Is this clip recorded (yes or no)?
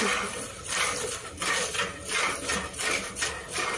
yes